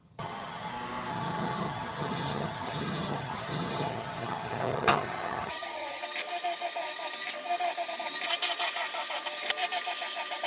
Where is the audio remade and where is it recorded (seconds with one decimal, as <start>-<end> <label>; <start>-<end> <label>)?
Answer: 0.0-0.7 remade; 0.7-1.1 recorded; 1.1-6.0 remade; 6.0-10.5 recorded